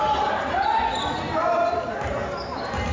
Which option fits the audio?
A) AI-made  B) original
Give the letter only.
B